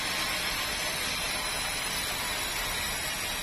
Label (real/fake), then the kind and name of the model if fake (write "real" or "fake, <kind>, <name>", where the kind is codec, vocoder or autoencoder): real